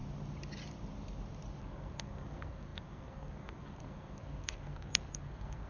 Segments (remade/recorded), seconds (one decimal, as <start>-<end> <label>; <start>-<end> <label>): 0.0-1.6 recorded; 1.6-5.7 remade